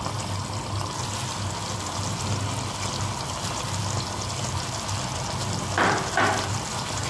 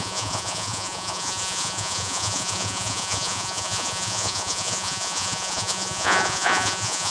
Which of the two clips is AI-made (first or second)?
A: second